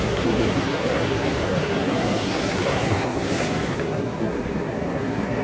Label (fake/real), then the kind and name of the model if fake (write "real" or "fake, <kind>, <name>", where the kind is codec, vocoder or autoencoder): fake, codec, SNAC